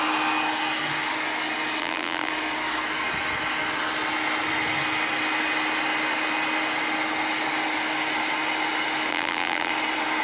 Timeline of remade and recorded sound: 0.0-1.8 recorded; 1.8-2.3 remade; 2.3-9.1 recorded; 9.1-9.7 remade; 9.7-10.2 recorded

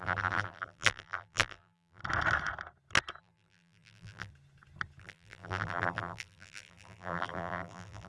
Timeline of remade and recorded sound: 0.0-2.0 remade; 2.0-3.2 recorded; 3.2-4.3 remade; 4.3-5.0 recorded; 5.0-8.1 remade

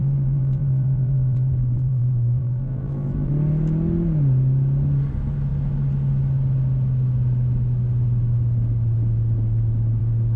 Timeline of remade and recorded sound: 0.0-3.3 remade; 3.3-10.4 recorded

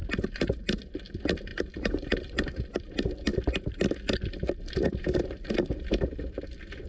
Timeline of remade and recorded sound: 0.0-0.8 remade; 0.8-1.5 recorded; 1.5-2.8 remade; 2.8-6.9 recorded

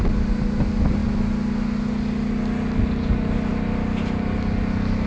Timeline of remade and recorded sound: 0.0-3.5 recorded; 3.5-4.0 remade; 4.0-5.1 recorded